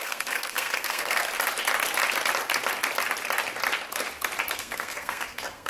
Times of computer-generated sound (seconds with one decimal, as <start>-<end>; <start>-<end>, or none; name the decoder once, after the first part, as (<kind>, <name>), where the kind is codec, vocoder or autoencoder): 0.0-1.2 (codec, SNAC); 4.5-5.7